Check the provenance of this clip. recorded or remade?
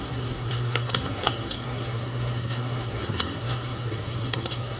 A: remade